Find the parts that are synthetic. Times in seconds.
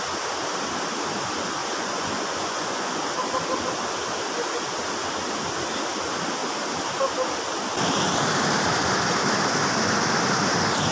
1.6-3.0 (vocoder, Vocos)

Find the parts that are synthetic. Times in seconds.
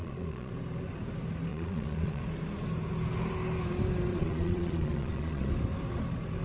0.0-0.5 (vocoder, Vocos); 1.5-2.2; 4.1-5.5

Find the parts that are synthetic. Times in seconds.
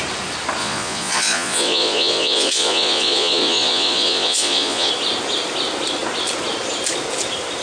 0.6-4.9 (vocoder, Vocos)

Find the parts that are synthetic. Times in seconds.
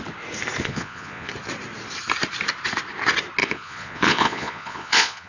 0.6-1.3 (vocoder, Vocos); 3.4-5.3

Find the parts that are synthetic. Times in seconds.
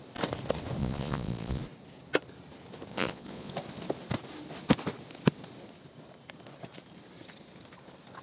0.8-1.6 (vocoder, Vocos); 2.9-3.5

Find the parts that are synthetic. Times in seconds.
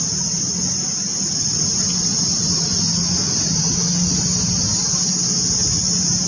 none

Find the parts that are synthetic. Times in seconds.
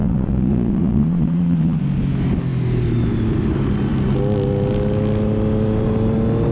0.0-1.8 (vocoder, Vocos)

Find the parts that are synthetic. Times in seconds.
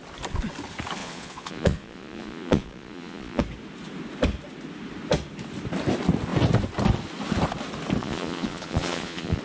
1.0-3.4 (vocoder, Vocos); 8.0-9.4